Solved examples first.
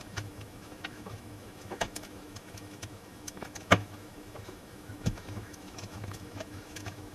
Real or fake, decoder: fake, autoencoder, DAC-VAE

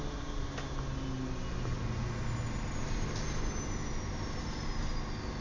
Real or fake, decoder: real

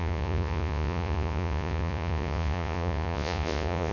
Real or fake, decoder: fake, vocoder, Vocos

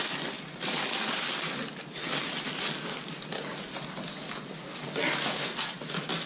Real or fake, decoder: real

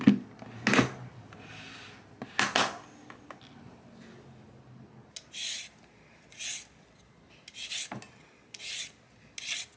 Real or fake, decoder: real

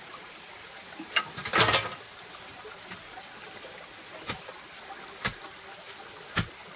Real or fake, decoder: real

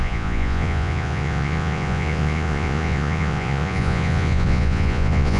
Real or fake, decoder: fake, vocoder, Vocos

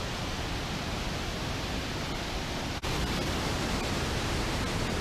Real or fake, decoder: real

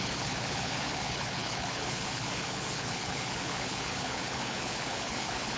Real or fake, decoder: fake, codec, HILCodec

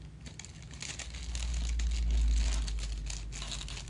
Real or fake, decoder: real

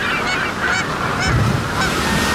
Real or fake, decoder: real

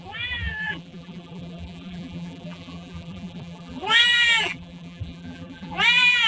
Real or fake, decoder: fake, vocoder, BigVGAN v2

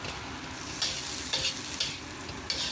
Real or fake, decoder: real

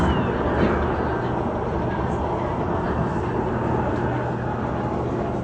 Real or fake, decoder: real